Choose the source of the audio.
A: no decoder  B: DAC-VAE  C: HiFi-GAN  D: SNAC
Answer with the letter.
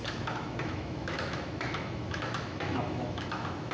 B